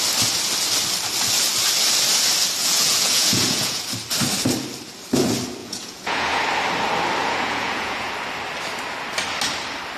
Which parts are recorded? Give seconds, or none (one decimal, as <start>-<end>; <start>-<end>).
0.0-2.6; 3.8-5.6; 6.4-7.2; 8.1-10.0